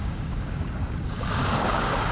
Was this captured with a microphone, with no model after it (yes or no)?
no